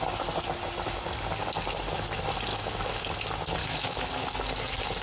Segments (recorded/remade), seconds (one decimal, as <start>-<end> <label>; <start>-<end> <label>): 0.0-2.5 recorded; 2.5-3.1 remade; 3.1-3.6 recorded; 3.6-4.2 remade; 4.2-5.0 recorded